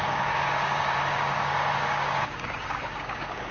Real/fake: fake